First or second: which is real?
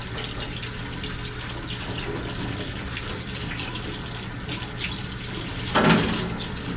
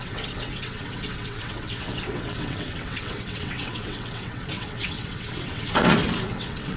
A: first